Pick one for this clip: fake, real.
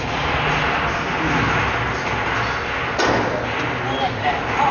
real